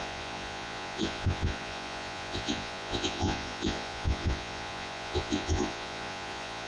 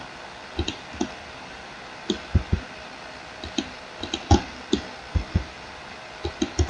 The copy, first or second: first